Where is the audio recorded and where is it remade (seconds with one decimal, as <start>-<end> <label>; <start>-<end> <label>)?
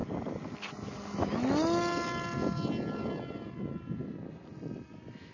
0.0-5.3 recorded